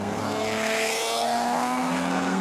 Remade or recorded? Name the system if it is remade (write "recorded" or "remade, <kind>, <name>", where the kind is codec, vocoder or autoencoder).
remade, codec, SNAC